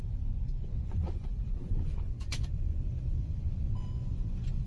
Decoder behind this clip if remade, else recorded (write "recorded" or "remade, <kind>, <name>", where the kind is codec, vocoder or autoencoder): remade, vocoder, Vocos